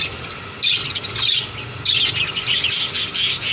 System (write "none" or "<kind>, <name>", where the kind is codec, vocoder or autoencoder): none